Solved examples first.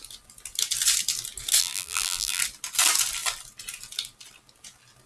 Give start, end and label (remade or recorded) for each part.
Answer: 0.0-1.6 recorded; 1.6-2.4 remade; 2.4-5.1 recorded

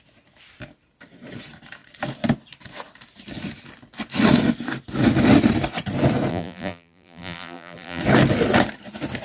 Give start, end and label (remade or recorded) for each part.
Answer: 0.0-6.3 recorded; 6.3-8.0 remade; 8.0-9.2 recorded

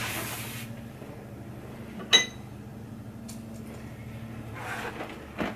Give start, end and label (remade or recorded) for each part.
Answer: 0.0-5.6 recorded